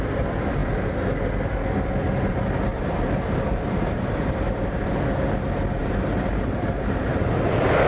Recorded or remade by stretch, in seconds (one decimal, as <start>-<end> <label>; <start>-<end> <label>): 0.0-2.7 recorded; 2.7-5.0 remade; 5.0-5.8 recorded; 5.8-7.1 remade; 7.1-7.9 recorded